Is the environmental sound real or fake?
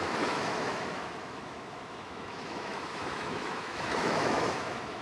fake